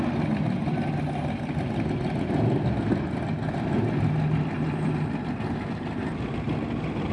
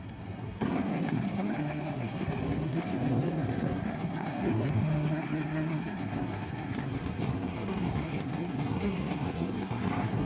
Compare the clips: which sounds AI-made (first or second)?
second